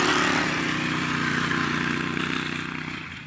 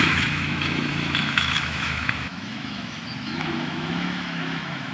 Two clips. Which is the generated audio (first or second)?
second